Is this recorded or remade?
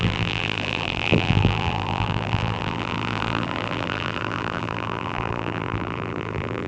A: remade